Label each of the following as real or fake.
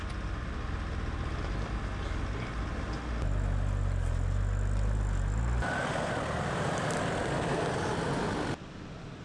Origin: real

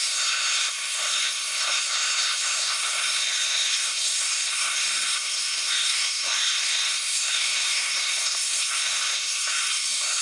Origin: fake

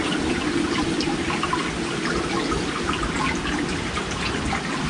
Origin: real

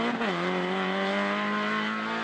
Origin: real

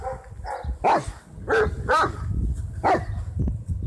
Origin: real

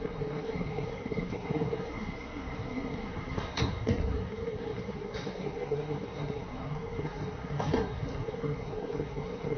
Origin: fake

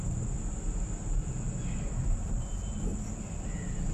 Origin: real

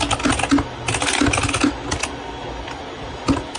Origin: real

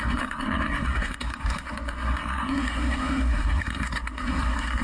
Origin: fake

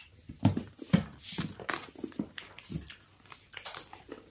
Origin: real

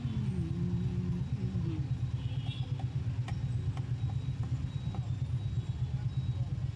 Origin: real